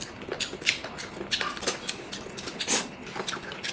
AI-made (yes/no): no